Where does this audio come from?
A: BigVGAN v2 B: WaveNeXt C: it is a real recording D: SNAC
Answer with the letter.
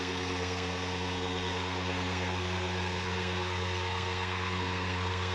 D